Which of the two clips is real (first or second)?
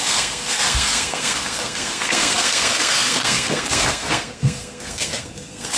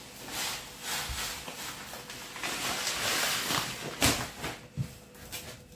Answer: second